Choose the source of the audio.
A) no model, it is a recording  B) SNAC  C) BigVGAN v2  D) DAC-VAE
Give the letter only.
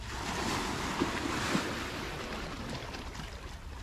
C